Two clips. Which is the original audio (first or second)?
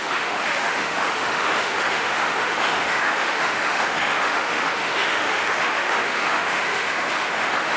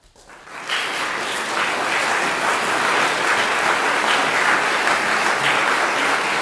second